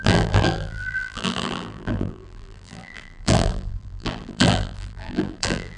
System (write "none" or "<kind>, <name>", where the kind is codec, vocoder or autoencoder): vocoder, BigVGAN v2